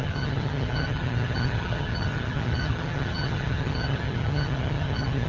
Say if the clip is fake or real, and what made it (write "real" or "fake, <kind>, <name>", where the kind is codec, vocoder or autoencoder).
fake, vocoder, HiFi-GAN